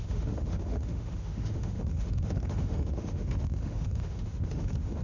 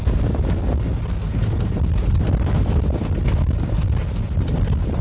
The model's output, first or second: first